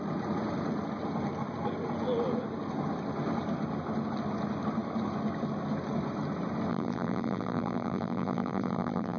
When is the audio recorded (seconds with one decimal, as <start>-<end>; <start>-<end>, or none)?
0.0-6.7